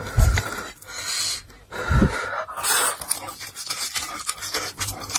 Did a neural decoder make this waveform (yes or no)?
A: no